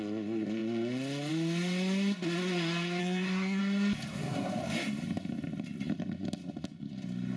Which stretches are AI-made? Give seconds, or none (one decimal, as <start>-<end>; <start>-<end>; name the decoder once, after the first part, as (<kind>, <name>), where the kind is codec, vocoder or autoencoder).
3.0-3.6 (codec, SNAC); 4.1-4.6